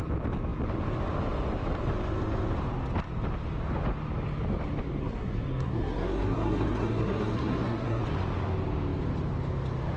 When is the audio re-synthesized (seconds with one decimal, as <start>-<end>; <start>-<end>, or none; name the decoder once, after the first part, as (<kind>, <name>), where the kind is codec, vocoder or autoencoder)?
5.0-8.0 (codec, SNAC)